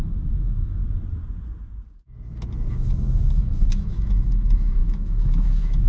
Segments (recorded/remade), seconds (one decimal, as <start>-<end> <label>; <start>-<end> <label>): 0.0-0.8 remade; 0.8-2.7 recorded; 2.7-5.9 remade